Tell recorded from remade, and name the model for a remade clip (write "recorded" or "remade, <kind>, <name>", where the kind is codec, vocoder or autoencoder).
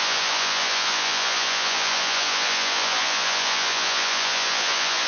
remade, vocoder, Vocos